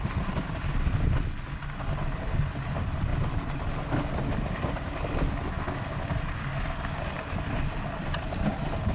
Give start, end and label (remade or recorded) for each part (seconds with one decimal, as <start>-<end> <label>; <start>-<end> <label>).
0.0-8.9 recorded